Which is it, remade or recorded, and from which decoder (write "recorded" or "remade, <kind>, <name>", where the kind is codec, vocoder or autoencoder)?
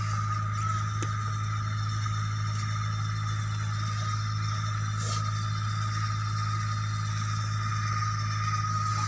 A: recorded